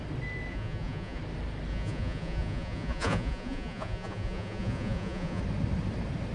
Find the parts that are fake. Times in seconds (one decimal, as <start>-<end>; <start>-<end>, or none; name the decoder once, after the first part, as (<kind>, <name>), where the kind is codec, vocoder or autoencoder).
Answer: 0.5-1.2 (vocoder, Vocos); 1.7-5.4